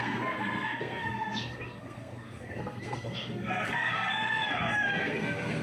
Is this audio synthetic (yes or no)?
yes